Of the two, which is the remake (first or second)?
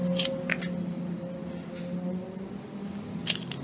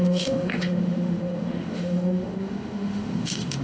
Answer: second